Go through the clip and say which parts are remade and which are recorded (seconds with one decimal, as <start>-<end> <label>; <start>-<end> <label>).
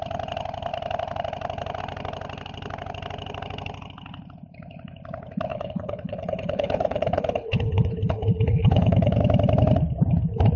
0.0-5.5 recorded; 5.5-9.2 remade; 9.2-10.6 recorded